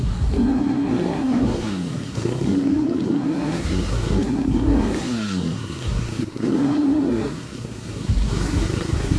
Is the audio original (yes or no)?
no